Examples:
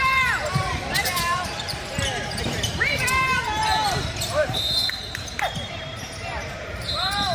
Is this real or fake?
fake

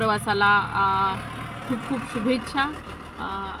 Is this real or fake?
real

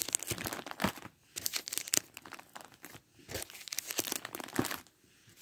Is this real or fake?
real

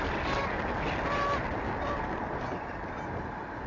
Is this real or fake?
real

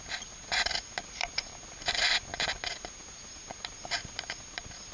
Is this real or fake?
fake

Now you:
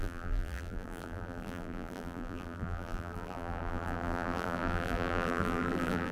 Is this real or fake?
fake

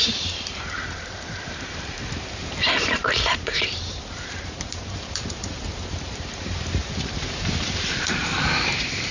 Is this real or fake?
fake